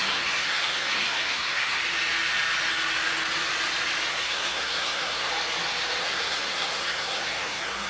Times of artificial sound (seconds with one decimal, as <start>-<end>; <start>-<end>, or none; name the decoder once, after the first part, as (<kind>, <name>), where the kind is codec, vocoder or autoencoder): 0.0-1.8 (codec, SNAC); 4.1-5.3; 6.0-7.9